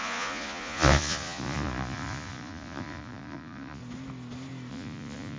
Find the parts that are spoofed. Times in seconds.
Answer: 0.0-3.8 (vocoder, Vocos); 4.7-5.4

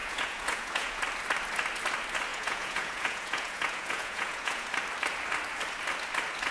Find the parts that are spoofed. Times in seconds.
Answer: 0.0-1.0 (vocoder, Vocos); 2.3-4.7

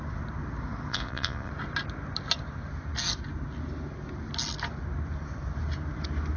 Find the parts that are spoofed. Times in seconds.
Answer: 0.9-1.5 (vocoder, Vocos)

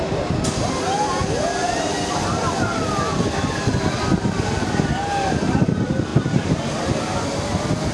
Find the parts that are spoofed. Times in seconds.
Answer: none

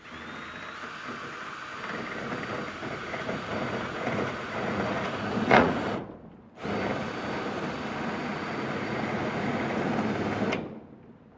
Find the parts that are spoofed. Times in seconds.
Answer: 2.8-6.1 (vocoder, Vocos); 8.3-9.9

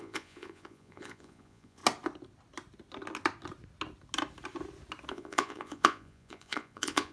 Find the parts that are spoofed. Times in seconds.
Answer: 0.0-1.8 (vocoder, Vocos); 5.1-7.1

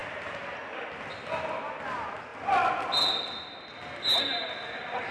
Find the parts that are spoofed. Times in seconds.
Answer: none